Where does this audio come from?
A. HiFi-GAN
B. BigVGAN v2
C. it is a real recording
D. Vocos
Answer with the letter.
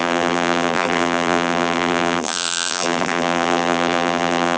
B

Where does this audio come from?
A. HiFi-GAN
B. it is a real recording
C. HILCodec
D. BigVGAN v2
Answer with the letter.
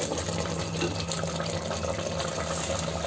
B